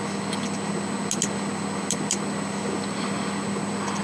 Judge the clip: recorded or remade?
recorded